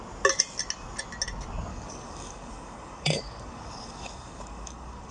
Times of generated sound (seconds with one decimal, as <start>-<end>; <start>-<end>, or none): 1.7-5.1